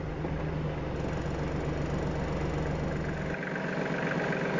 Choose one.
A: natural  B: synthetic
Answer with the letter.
A